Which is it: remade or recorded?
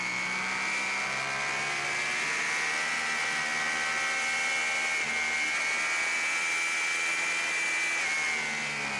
recorded